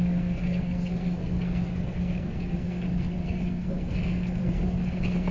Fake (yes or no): yes